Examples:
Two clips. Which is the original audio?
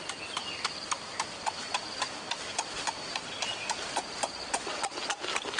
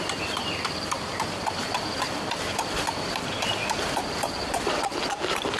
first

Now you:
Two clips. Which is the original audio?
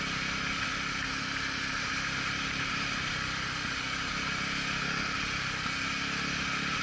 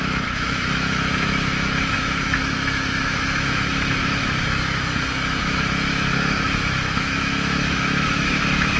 first